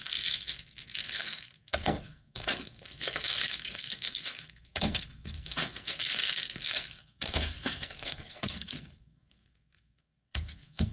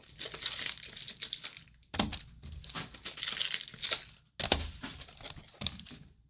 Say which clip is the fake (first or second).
first